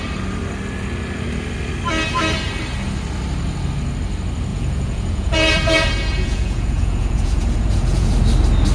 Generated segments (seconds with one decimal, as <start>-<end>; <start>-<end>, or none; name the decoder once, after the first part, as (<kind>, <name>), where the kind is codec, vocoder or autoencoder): 4.5-8.1 (vocoder, Vocos)